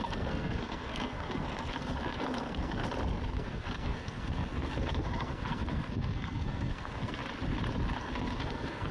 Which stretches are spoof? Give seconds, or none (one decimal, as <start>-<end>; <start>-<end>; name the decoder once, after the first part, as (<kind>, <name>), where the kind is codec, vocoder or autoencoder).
0.0-2.8 (codec, SNAC); 3.3-7.2; 8.0-8.9